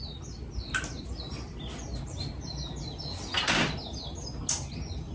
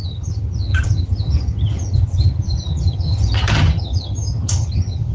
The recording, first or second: first